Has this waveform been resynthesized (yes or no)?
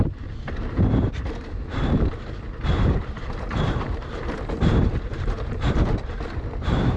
yes